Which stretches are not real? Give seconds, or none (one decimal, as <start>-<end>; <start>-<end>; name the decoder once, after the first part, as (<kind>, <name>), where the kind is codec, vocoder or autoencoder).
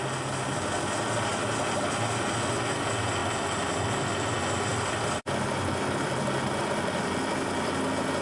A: 4.7-6.2 (vocoder, BigVGAN v2)